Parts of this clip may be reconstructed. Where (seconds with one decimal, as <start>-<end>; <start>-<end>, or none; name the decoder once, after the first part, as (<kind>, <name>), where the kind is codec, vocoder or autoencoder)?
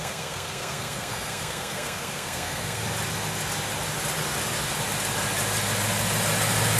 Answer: 0.0-2.8 (codec, SNAC)